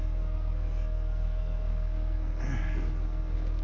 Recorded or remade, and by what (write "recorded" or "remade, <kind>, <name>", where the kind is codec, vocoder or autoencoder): remade, codec, SNAC